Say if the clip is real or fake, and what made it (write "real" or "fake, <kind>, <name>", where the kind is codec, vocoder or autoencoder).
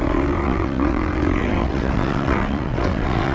fake, vocoder, WaveNeXt